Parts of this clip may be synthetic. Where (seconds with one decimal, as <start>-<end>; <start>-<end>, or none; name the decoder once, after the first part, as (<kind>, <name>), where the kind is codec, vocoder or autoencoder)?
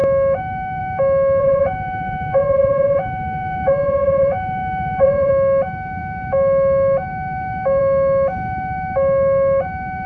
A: 1.4-5.3 (vocoder, Vocos)